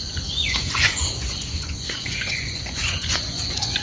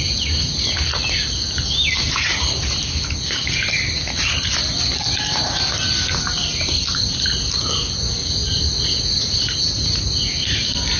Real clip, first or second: second